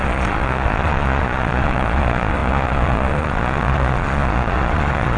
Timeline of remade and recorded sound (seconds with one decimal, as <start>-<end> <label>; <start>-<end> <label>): 0.0-5.2 remade